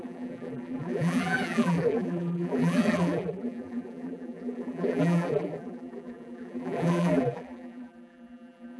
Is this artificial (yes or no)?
yes